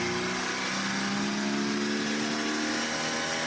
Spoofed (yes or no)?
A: no